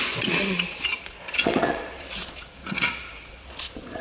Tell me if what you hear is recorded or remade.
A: remade